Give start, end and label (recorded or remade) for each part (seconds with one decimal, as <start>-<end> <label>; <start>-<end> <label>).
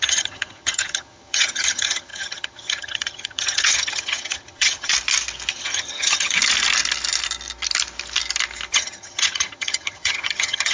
0.0-4.9 remade; 4.9-5.5 recorded; 5.5-6.4 remade; 6.4-8.7 recorded; 8.7-10.7 remade